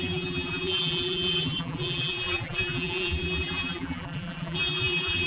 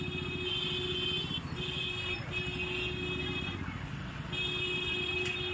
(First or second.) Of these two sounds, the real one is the second